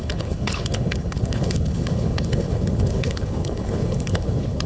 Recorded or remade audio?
remade